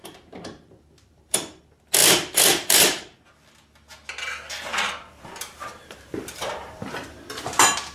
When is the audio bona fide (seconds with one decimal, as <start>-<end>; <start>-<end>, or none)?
1.6-2.0; 3.2-4.7; 6.8-7.9